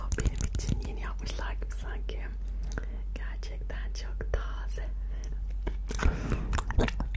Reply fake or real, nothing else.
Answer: real